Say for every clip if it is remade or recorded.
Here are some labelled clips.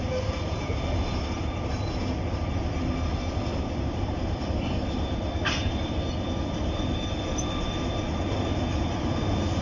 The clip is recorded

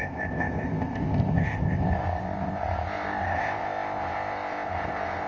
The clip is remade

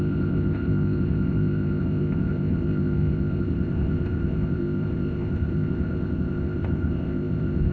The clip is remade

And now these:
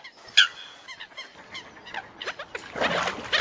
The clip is recorded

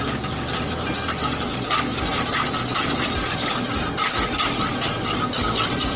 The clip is recorded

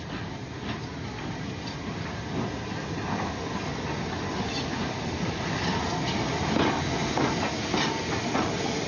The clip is recorded